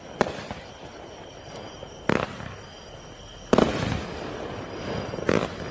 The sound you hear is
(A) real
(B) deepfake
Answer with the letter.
A